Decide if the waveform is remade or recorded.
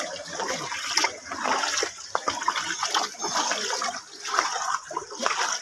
recorded